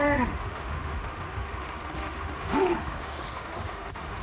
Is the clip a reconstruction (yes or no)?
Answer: yes